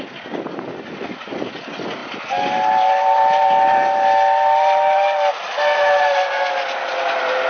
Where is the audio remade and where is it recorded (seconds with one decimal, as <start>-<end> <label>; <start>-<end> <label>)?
0.0-7.5 recorded